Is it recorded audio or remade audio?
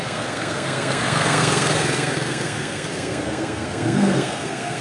remade